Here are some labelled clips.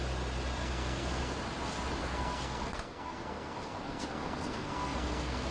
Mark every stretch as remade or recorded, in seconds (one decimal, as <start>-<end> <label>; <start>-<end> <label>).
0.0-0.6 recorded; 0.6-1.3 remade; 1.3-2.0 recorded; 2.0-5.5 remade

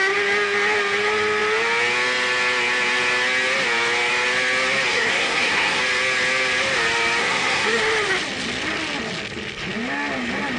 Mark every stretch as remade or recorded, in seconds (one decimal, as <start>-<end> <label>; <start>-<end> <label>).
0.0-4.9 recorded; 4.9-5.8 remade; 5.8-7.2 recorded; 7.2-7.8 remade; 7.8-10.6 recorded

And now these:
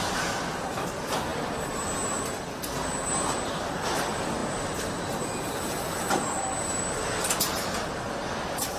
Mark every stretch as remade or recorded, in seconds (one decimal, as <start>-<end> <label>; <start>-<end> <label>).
0.0-8.8 recorded

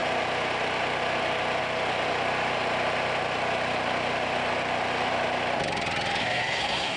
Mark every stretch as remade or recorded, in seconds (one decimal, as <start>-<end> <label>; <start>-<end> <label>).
0.0-6.2 recorded; 6.2-7.0 remade

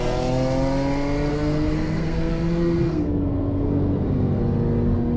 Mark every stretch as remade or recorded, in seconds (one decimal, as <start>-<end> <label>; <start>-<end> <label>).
0.0-1.3 recorded; 1.3-4.4 remade; 4.4-5.2 recorded